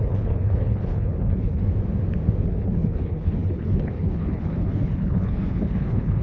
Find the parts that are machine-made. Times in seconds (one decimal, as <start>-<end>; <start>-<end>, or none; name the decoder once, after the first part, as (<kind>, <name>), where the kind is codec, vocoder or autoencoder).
0.0-1.6 (codec, HILCodec); 2.4-6.2